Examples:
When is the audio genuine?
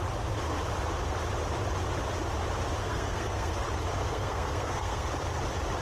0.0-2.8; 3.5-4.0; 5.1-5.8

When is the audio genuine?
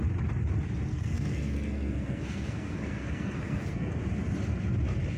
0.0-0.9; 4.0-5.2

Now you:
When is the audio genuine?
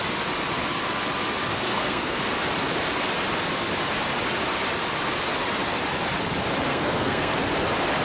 0.0-1.5; 2.2-6.7; 7.4-8.0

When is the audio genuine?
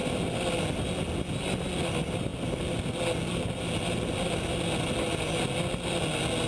0.0-6.5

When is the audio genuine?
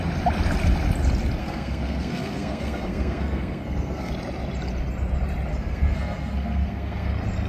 0.0-1.4; 4.1-5.5; 7.1-7.5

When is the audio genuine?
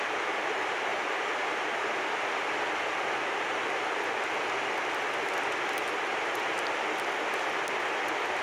0.0-8.4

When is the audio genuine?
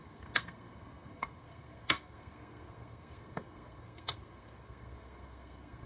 none